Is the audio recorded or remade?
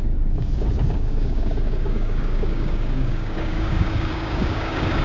remade